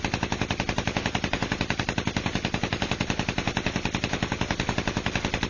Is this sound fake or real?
real